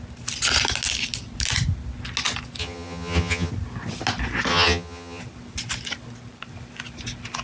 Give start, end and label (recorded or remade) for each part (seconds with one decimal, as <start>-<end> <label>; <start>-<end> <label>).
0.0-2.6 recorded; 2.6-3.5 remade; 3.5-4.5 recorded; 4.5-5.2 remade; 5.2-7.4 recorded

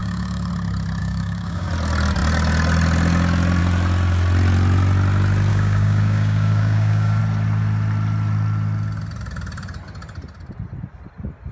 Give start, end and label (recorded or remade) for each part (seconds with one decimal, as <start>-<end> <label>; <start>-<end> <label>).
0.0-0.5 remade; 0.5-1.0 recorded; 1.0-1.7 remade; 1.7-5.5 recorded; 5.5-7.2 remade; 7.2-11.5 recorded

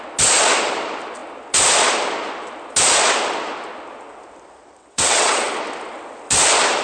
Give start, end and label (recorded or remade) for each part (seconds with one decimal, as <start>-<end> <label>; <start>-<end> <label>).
0.0-4.8 recorded; 4.8-5.6 remade; 5.6-6.8 recorded